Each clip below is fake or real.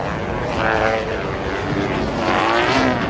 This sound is real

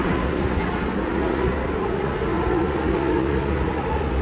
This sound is fake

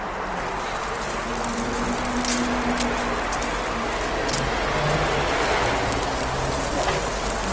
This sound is real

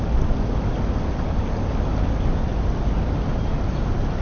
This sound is real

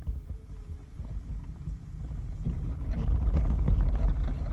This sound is real